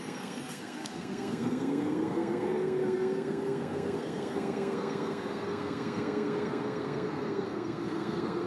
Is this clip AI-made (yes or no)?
yes